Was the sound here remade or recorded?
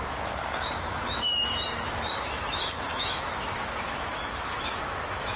remade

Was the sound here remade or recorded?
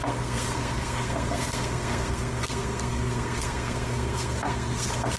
remade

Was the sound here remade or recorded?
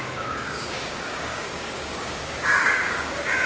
remade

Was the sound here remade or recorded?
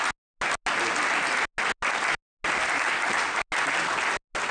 recorded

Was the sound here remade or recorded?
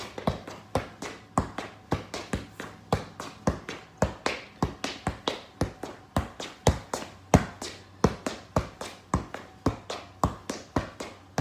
recorded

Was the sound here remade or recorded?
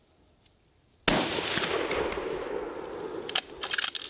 recorded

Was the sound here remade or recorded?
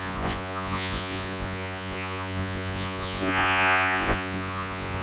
remade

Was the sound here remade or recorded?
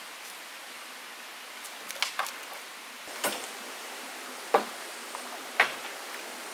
recorded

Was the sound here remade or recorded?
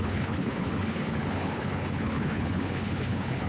remade